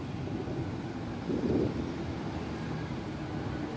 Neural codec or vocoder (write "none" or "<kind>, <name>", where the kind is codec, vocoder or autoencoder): none